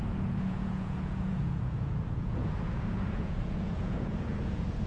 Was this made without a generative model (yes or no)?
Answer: no